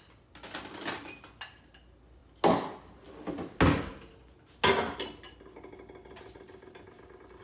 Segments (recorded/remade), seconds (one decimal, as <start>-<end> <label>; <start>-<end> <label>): 0.0-7.4 recorded